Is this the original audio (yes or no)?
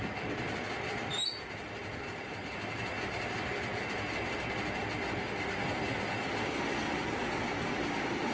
yes